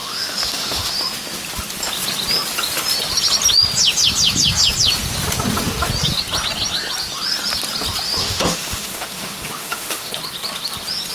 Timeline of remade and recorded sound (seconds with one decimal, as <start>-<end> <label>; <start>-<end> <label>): 0.0-0.9 remade; 0.9-8.2 recorded; 8.2-10.1 remade; 10.1-11.1 recorded